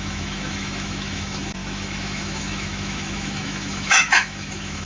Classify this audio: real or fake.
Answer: fake